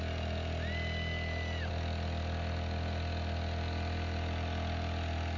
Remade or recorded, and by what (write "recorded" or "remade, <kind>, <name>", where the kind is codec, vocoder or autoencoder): recorded